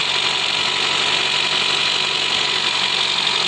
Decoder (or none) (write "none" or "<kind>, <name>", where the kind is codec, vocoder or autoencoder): none